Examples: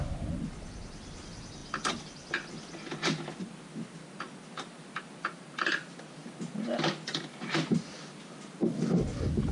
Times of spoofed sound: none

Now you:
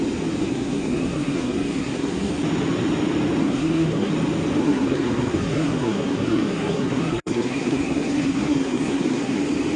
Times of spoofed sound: 0.4-2.3 (codec, SNAC); 3.4-4.1; 4.6-9.4

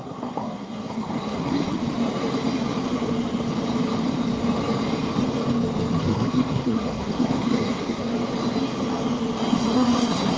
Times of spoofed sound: 0.0-1.8 (codec, SNAC); 6.0-8.1; 9.5-10.4

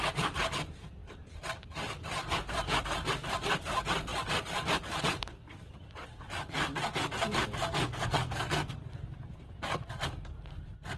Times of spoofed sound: 7.7-8.8 (codec, SNAC)

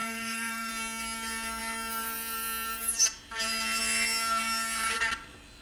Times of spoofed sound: 0.0-0.7 (codec, SNAC)

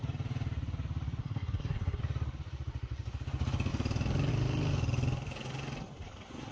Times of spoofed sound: 1.2-2.0 (codec, SNAC)